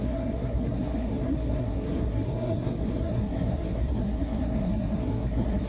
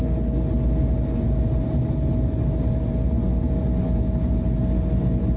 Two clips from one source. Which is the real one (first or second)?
second